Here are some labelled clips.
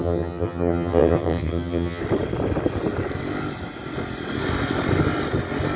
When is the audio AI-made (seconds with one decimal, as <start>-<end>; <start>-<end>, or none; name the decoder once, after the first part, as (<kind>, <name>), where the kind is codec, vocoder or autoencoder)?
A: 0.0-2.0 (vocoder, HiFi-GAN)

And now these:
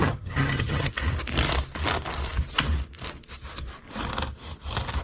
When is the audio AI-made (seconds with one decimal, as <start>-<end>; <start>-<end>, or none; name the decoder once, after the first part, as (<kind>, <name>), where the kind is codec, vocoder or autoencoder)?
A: 0.0-0.9 (vocoder, HiFi-GAN)

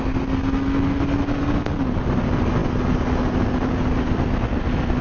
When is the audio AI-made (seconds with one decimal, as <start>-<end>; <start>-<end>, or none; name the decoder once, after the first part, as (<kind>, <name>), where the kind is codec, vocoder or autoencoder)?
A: none

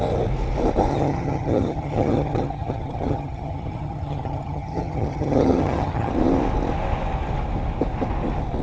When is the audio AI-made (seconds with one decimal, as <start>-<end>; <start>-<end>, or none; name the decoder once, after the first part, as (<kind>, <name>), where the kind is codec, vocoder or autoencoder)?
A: 0.9-6.1 (vocoder, HiFi-GAN)

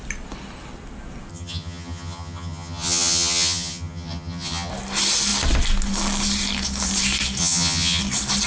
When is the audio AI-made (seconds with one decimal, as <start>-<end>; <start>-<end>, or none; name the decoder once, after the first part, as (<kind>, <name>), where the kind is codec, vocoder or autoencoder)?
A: 1.3-4.7 (vocoder, HiFi-GAN); 7.4-8.0

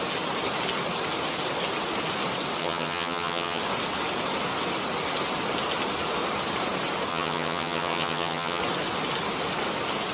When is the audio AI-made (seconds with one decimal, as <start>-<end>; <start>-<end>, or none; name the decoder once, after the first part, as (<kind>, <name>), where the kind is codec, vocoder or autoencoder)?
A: 2.6-3.6 (vocoder, HiFi-GAN); 7.1-8.6

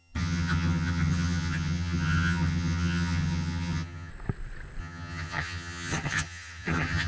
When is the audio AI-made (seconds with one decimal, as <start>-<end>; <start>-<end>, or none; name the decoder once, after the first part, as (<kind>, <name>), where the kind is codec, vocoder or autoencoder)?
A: 0.0-4.1 (vocoder, HiFi-GAN); 4.8-7.1

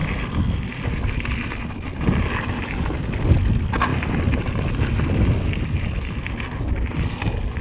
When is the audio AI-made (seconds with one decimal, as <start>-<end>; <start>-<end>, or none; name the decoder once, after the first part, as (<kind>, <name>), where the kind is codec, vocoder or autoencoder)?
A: none